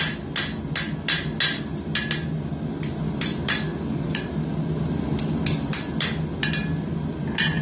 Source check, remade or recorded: recorded